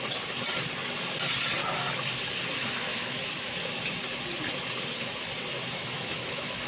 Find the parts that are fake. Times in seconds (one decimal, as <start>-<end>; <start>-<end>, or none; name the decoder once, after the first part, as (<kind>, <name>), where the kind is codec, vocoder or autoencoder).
2.9-3.6 (autoencoder, DAC-VAE); 5.8-6.7